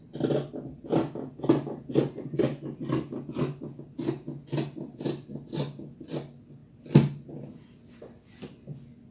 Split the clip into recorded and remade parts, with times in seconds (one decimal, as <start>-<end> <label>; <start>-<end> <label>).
0.0-9.1 recorded